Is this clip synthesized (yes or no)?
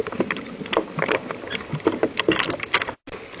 no